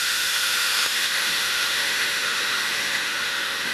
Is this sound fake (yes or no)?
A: yes